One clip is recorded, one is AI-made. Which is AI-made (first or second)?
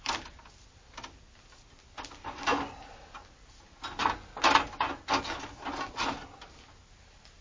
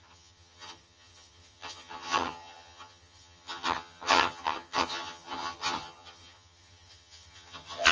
second